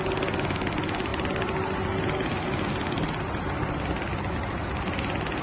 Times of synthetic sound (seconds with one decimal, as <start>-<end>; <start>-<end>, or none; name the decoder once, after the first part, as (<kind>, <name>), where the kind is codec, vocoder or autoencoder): none